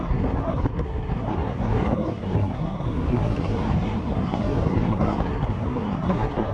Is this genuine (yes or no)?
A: no